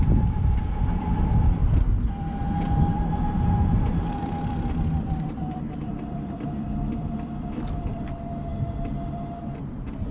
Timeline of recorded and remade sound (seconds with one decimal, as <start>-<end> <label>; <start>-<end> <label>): 0.0-1.6 remade; 1.6-4.2 recorded; 4.2-8.5 remade; 8.5-9.4 recorded; 9.4-10.1 remade